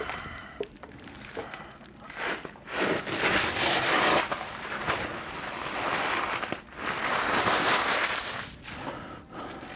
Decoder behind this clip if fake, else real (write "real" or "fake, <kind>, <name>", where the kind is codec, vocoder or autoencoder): fake, vocoder, BigVGAN v2